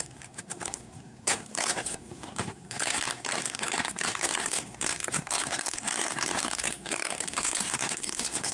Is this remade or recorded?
remade